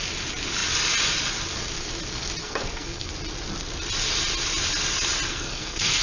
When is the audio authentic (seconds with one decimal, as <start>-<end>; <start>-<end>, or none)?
0.0-2.4; 3.1-5.3